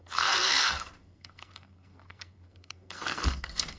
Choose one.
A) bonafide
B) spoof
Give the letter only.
B